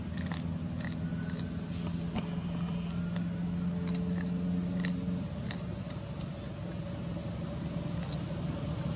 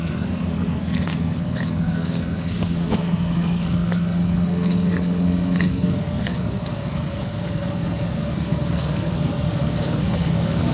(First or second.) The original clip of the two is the first